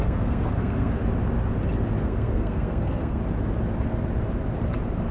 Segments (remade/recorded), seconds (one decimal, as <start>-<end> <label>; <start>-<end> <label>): 0.0-1.0 remade; 1.0-2.0 recorded; 2.0-3.2 remade; 3.2-5.1 recorded